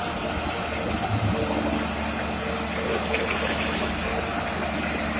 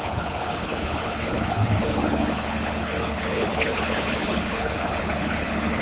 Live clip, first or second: first